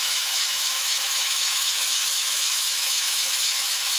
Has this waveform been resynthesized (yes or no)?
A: yes